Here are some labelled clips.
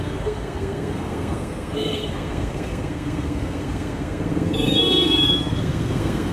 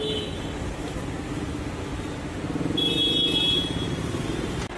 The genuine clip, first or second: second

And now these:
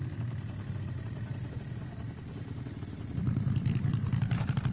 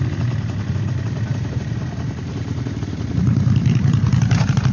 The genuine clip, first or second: first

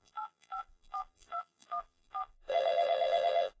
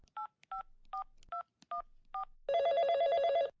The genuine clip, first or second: second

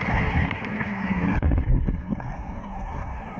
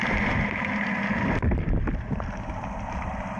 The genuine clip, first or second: second